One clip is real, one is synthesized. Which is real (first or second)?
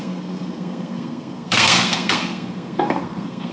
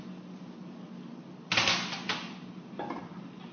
second